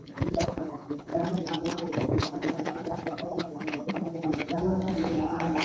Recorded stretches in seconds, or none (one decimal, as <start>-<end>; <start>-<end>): 1.1-1.9; 4.4-4.9